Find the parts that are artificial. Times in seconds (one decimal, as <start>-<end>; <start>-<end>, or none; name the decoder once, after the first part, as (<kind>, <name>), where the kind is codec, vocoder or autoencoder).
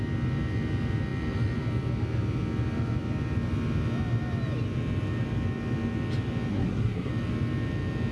6.5-7.1 (codec, SNAC)